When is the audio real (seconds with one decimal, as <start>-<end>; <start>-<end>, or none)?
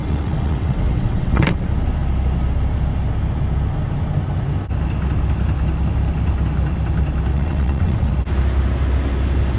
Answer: 1.6-7.3; 8.1-9.6